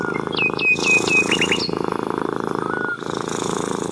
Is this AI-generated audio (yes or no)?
no